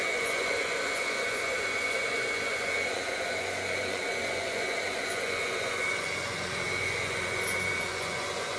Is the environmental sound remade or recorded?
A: remade